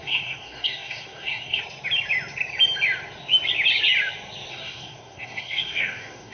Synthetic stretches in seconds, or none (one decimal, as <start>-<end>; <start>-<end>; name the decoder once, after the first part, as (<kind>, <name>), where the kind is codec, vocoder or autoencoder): 0.0-1.6 (codec, SNAC); 4.5-6.3